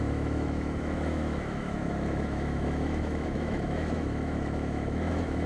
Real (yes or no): no